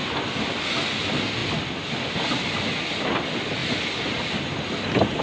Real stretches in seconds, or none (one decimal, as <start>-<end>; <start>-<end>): 0.0-5.2